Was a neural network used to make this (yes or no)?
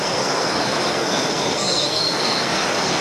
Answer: yes